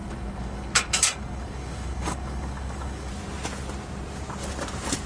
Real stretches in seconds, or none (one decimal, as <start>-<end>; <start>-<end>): 3.1-5.1